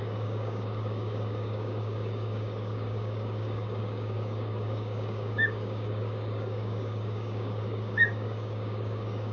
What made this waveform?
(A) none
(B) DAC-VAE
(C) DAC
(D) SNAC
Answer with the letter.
C